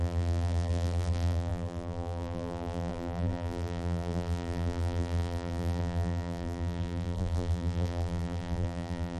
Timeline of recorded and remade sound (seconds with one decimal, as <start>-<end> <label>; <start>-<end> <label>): 0.0-9.2 remade